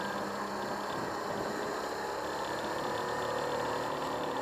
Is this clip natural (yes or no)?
yes